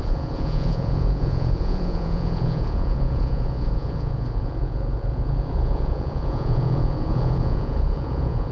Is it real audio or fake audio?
fake